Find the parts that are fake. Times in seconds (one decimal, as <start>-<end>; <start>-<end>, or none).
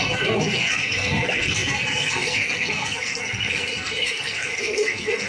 0.0-5.3